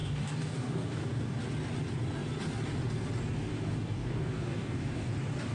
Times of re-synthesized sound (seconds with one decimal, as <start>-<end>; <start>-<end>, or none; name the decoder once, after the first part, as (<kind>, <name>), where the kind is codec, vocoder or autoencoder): 0.0-1.4 (codec, DAC); 3.5-5.1